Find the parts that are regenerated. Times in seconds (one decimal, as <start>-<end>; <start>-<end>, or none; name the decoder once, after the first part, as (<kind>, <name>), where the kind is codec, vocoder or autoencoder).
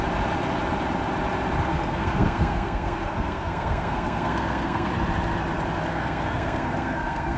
1.7-4.9 (codec, SNAC); 5.9-7.4